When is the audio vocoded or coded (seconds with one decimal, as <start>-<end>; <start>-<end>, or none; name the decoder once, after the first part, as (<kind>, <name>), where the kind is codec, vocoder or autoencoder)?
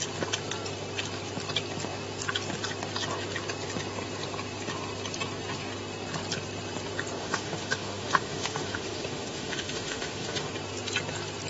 7.2-10.5 (autoencoder, DAC-VAE)